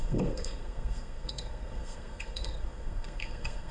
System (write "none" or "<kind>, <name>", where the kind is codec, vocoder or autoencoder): codec, SNAC